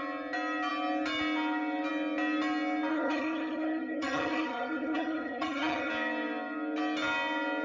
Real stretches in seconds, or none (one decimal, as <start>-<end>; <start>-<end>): 0.0-2.9; 5.9-7.6